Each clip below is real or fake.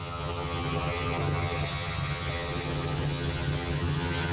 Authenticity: fake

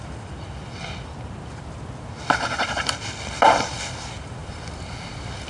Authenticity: real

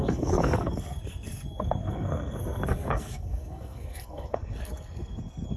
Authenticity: fake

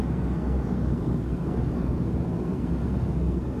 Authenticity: fake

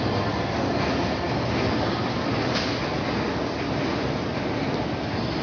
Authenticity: real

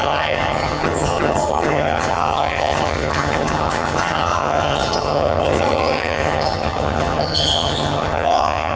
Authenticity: fake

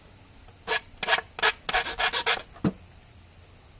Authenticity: real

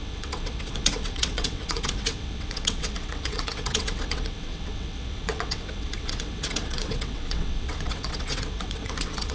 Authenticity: fake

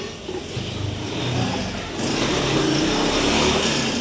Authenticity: real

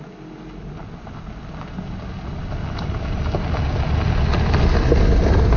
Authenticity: real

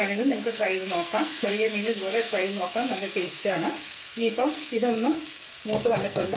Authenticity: fake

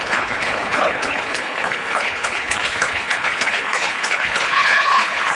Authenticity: fake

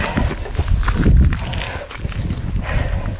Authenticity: real